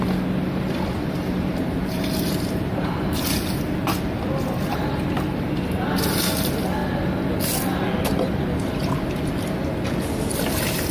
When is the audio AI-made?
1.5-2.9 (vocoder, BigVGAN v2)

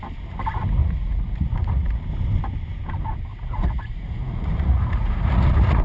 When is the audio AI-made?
0.8-2.0 (vocoder, Vocos); 3.3-5.8

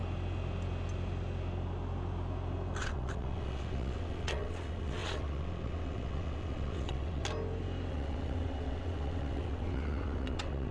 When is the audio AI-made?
2.8-7.2 (vocoder, WaveNeXt); 7.9-10.7